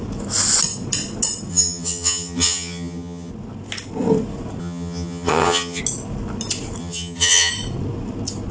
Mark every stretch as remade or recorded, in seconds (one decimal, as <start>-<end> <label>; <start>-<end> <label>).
0.0-1.5 recorded; 1.5-3.3 remade; 3.3-4.6 recorded; 4.6-5.8 remade; 5.8-6.8 recorded; 6.8-7.5 remade; 7.5-8.5 recorded